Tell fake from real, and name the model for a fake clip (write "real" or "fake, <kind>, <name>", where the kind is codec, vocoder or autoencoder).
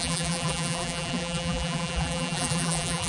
fake, vocoder, BigVGAN v2